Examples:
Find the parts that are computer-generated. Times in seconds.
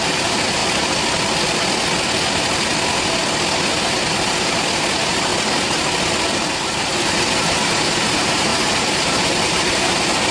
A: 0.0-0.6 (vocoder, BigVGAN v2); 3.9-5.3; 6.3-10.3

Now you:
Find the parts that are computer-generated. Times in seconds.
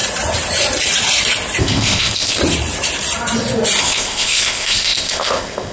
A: 1.6-2.4 (codec, ZipCodec); 3.8-5.7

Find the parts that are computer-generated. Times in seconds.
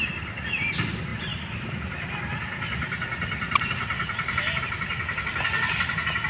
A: none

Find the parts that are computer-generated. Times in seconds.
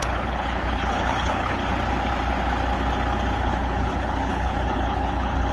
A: 0.0-1.6 (codec, HILCodec); 3.4-5.5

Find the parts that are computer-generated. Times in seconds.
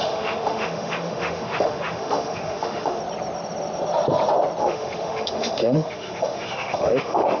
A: 0.0-3.0 (autoencoder, DAC-VAE); 4.6-7.4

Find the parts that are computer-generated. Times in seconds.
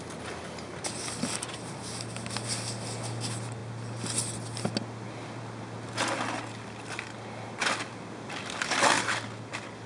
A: none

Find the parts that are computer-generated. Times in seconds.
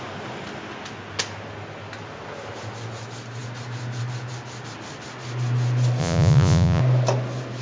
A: 6.0-6.8 (vocoder, Vocos)